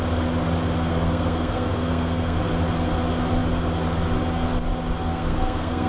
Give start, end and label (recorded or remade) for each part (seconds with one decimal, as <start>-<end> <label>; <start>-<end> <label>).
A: 0.0-0.9 recorded; 0.9-2.4 remade; 2.4-5.1 recorded; 5.1-5.9 remade